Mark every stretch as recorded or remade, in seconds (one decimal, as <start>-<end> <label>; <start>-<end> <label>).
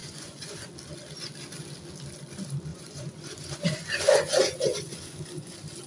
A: 0.0-0.7 remade; 0.7-2.7 recorded; 2.7-5.5 remade; 5.5-5.9 recorded